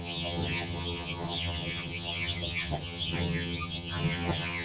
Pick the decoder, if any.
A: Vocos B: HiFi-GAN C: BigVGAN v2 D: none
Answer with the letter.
B